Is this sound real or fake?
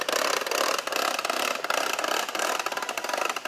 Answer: real